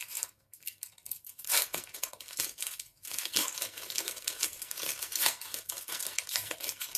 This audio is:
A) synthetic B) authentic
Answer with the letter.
A